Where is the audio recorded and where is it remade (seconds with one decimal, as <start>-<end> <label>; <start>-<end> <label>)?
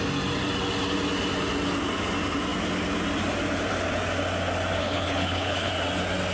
0.0-4.8 recorded; 4.8-5.7 remade; 5.7-6.3 recorded